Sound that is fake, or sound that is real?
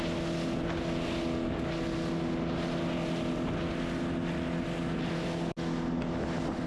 real